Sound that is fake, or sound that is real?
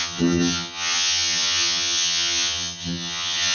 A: fake